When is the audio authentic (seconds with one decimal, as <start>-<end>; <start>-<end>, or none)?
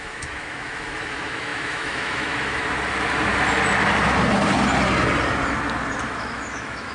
2.6-6.0